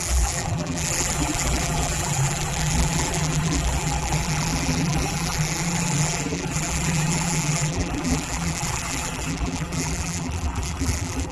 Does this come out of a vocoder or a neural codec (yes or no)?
yes